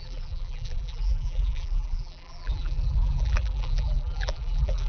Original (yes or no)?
no